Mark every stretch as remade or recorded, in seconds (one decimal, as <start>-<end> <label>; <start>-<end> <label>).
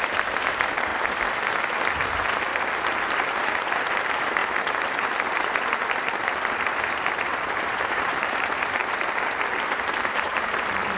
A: 0.0-0.9 remade; 0.9-2.0 recorded; 2.0-2.5 remade; 2.5-4.0 recorded; 4.0-4.4 remade; 4.4-7.2 recorded; 7.2-8.8 remade; 8.8-9.7 recorded; 9.7-11.0 remade